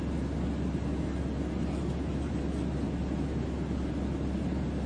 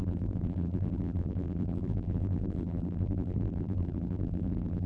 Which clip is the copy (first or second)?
second